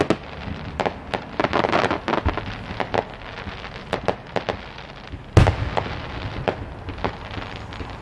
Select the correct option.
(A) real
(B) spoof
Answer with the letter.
A